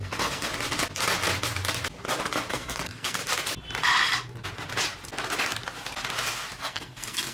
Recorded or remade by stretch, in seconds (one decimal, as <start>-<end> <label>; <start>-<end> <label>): 0.0-0.5 remade; 0.5-2.5 recorded; 2.5-3.2 remade; 3.2-6.6 recorded; 6.6-7.3 remade